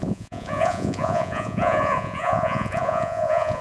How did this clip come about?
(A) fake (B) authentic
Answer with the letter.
A